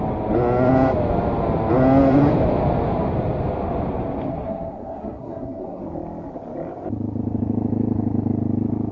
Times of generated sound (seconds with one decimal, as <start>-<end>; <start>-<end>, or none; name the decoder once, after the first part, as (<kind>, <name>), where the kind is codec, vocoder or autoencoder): 4.3-5.8 (codec, SNAC)